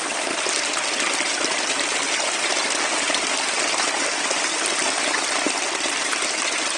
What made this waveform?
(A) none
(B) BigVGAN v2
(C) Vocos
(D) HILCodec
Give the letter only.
A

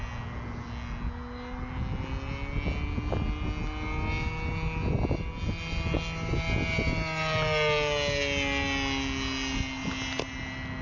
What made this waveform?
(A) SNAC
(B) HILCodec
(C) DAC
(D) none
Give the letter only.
D